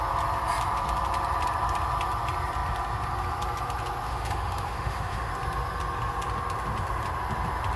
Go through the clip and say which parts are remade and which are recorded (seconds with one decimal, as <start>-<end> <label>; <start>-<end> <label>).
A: 0.0-4.1 recorded; 4.1-5.3 remade; 5.3-7.8 recorded